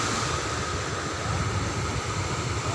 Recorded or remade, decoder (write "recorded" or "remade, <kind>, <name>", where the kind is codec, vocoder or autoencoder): recorded